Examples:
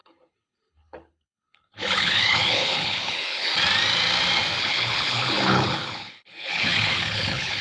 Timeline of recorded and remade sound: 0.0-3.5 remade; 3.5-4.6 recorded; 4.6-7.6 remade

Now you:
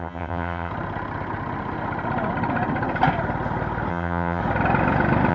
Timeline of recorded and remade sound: 0.0-0.7 remade; 0.7-3.9 recorded; 3.9-4.4 remade; 4.4-5.3 recorded

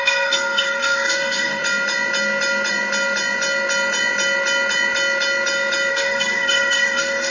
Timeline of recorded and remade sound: 0.0-1.6 remade; 1.6-5.9 recorded; 5.9-7.3 remade

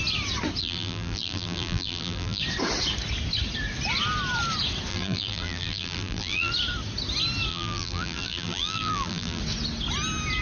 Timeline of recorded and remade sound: 0.0-0.6 recorded; 0.6-2.4 remade; 2.4-4.9 recorded; 4.9-6.5 remade; 6.5-7.5 recorded; 7.5-9.4 remade; 9.4-10.4 recorded